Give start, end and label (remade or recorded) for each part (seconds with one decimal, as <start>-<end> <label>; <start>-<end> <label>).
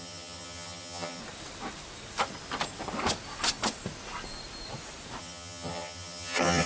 0.0-1.2 remade; 1.2-5.2 recorded; 5.2-6.7 remade